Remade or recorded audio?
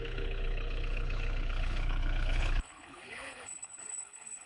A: remade